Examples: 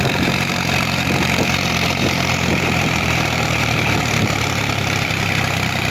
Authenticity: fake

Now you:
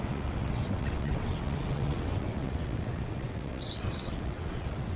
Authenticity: fake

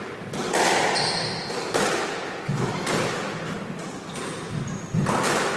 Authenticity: real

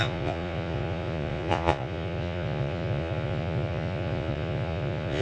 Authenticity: fake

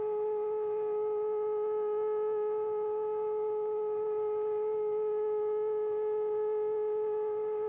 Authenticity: real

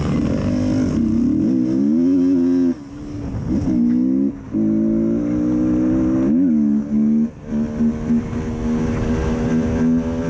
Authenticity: real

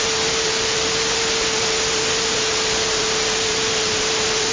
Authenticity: real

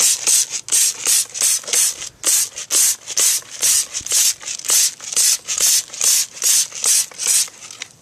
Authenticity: real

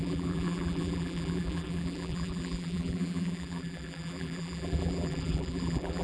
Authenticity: fake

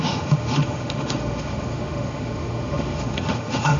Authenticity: fake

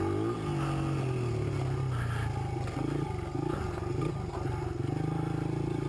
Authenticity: real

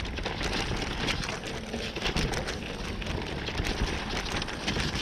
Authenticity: real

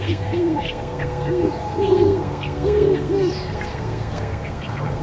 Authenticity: fake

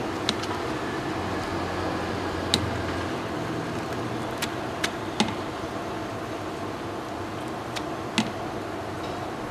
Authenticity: real